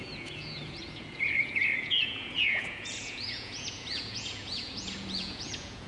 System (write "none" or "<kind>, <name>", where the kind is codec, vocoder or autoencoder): vocoder, Vocos